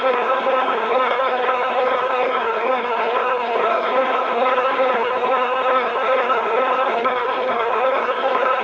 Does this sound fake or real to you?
fake